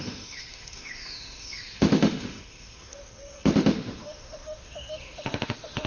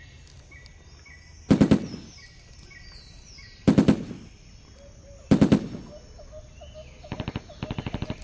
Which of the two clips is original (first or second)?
second